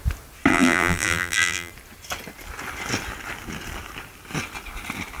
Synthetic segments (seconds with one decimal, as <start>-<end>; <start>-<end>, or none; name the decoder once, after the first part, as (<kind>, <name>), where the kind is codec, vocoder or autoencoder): 0.5-1.7 (vocoder, BigVGAN v2)